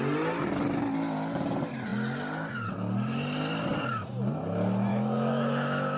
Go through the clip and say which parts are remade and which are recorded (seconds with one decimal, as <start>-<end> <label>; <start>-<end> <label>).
0.0-4.9 recorded; 4.9-6.0 remade